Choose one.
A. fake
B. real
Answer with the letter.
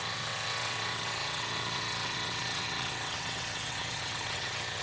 A